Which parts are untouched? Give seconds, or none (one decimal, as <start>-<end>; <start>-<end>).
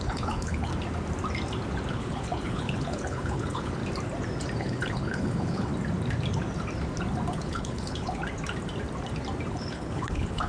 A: 0.7-1.9; 3.8-4.6; 5.7-7.3; 8.2-9.5